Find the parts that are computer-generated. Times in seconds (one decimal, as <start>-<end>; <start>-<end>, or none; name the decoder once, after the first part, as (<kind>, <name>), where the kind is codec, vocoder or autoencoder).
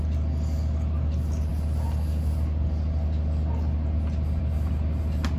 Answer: none